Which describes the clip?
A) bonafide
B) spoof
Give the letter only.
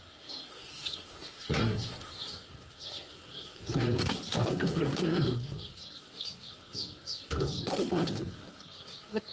B